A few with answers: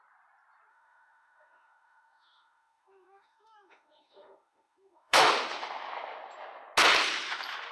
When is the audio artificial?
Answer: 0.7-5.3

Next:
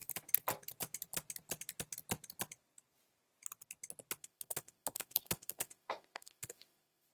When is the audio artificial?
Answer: 4.2-7.1

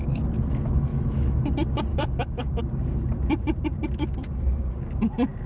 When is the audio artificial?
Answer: 0.9-1.5; 1.9-2.6

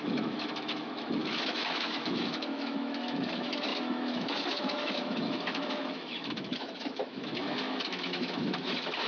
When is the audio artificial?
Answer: 0.0-9.1

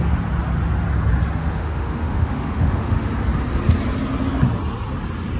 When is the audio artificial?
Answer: 1.4-3.1

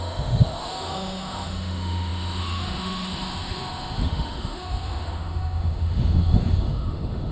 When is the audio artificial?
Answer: 0.0-7.3

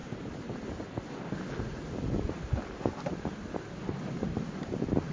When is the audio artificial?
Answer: none